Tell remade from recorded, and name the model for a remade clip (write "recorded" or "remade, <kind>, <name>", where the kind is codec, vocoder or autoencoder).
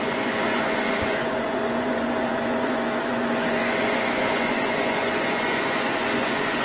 remade, vocoder, Vocos